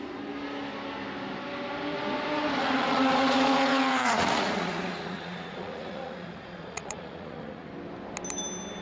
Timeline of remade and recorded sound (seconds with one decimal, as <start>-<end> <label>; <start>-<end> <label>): 0.0-2.6 recorded; 2.6-7.7 remade; 7.7-8.8 recorded